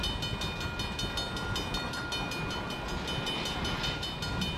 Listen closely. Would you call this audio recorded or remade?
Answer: recorded